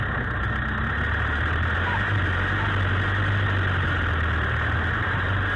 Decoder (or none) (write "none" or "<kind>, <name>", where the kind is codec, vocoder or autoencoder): none